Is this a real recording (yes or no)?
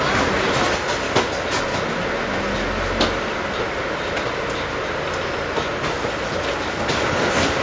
yes